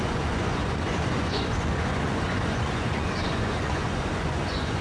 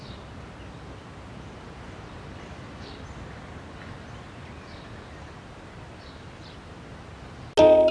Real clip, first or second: second